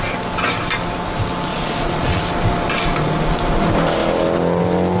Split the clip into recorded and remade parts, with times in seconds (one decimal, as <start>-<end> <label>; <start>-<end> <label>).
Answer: 0.0-1.5 recorded; 1.5-2.2 remade; 2.2-5.0 recorded